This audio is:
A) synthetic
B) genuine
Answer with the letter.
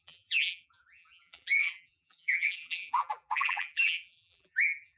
A